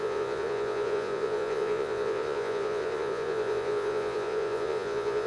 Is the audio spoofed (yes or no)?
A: yes